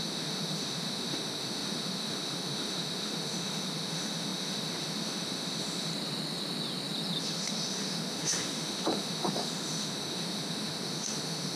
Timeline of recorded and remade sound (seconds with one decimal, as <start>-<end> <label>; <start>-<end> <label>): 0.0-5.9 remade; 5.9-7.2 recorded; 7.2-11.6 remade